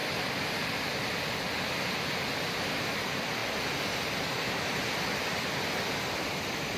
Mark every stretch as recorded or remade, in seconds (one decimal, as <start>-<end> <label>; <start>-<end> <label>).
0.0-6.8 recorded